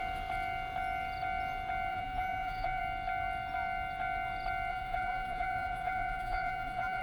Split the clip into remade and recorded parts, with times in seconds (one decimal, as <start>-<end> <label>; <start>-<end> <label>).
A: 0.0-1.9 recorded; 1.9-2.8 remade; 2.8-4.7 recorded; 4.7-7.0 remade